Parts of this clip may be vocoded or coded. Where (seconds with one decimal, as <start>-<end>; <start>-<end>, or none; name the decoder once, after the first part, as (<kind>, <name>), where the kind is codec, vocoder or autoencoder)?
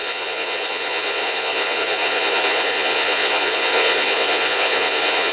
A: 0.0-5.3 (vocoder, Vocos)